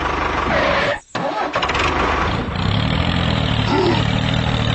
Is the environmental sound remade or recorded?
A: recorded